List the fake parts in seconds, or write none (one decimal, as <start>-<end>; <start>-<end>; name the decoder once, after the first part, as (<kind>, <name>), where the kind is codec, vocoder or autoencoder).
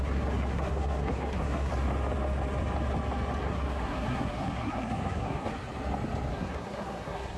0.0-1.7 (codec, SNAC); 3.4-5.5; 6.3-7.4